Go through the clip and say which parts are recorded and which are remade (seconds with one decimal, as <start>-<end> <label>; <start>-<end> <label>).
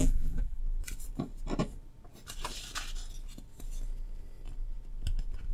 0.0-0.6 remade; 0.6-5.5 recorded